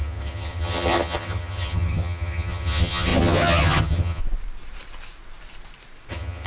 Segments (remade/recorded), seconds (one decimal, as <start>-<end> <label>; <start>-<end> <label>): 0.0-4.2 remade; 4.2-6.1 recorded; 6.1-6.5 remade